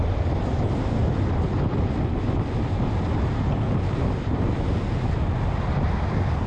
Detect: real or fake real